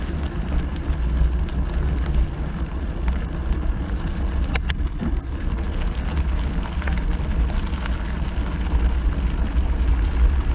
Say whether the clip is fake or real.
real